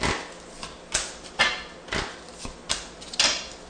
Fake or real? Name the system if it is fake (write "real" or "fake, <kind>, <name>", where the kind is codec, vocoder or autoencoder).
real